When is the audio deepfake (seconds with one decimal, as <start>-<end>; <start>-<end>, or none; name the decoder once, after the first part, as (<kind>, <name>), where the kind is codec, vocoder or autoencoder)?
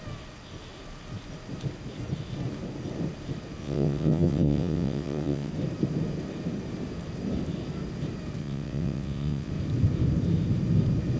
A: 3.6-5.5 (vocoder, WaveNeXt); 8.4-9.5